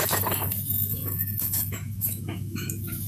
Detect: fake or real fake